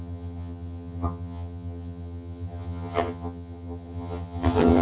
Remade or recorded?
remade